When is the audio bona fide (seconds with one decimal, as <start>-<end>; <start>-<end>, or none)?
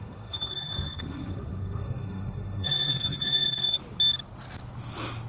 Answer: 3.8-5.3